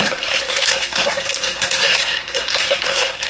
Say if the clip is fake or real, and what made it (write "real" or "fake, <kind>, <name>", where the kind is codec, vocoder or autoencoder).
fake, codec, SNAC